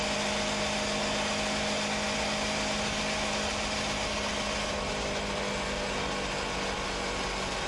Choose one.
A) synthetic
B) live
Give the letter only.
B